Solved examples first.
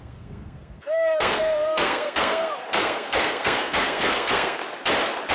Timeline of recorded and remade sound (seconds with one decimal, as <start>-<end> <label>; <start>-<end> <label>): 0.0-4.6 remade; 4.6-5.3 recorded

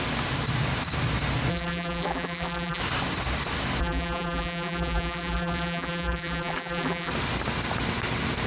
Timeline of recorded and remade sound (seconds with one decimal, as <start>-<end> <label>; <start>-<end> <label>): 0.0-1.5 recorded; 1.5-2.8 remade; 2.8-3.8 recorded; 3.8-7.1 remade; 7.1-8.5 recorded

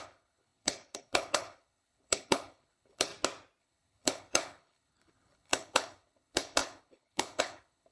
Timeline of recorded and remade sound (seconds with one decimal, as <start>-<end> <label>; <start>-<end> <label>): 0.0-3.1 remade; 3.1-3.6 recorded; 3.6-7.9 remade